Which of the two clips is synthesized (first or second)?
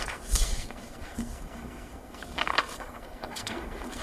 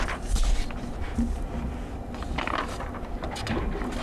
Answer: first